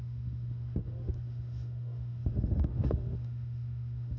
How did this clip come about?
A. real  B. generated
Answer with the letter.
B